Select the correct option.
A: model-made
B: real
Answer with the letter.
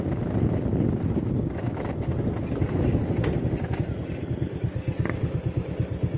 B